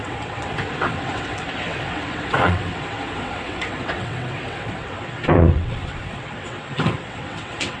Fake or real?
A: fake